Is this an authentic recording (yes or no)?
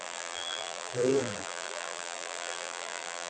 no